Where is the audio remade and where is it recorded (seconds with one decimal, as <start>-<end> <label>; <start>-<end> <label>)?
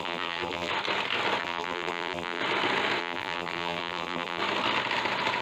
0.0-0.7 remade; 0.7-1.4 recorded; 1.4-2.4 remade; 2.4-3.0 recorded; 3.0-4.4 remade; 4.4-5.4 recorded